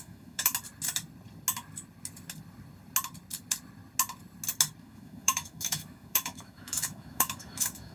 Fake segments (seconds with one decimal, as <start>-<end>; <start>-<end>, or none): 0.0-0.5; 4.8-7.9